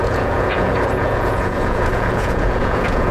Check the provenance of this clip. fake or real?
fake